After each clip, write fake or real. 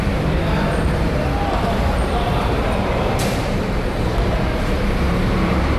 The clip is fake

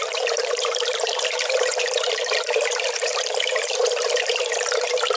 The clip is fake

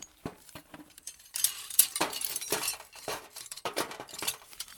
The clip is fake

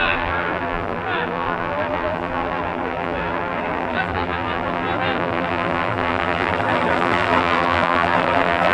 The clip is fake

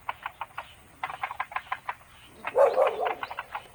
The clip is fake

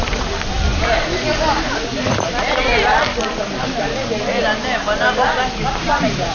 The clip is real